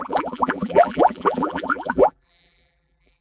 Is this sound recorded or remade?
remade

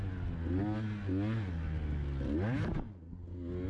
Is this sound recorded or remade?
recorded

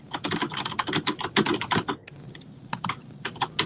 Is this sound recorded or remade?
recorded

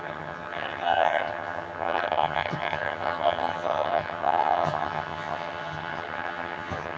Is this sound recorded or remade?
remade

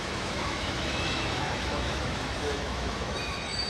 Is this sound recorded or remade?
remade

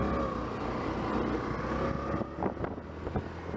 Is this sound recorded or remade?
recorded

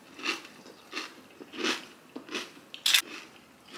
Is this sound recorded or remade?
recorded